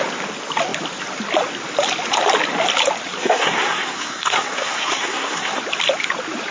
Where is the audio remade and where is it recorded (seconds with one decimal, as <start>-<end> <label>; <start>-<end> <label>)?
0.0-3.2 recorded; 3.2-5.6 remade; 5.6-6.5 recorded